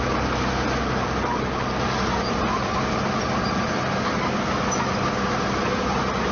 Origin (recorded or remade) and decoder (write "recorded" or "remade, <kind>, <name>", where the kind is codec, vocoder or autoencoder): recorded